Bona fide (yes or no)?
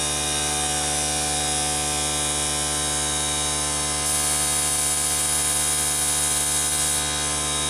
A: yes